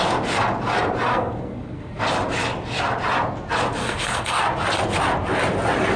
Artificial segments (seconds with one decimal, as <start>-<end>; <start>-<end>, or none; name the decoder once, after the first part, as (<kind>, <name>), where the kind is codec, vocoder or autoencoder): 1.1-2.0 (codec, SNAC); 3.8-4.4